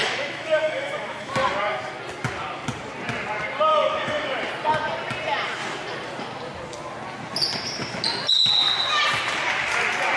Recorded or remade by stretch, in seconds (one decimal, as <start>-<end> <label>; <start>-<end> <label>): 0.0-1.3 remade; 1.3-3.7 recorded; 3.7-4.4 remade; 4.4-10.2 recorded